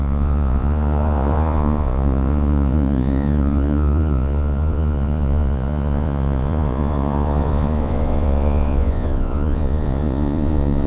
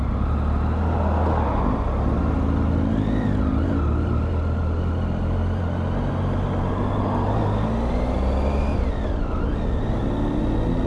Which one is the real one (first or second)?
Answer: second